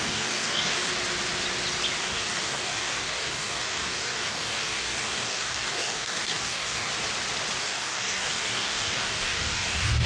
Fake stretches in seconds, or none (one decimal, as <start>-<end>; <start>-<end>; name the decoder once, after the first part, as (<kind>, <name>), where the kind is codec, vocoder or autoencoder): 0.0-0.9 (codec, DAC); 2.0-6.9; 7.6-10.1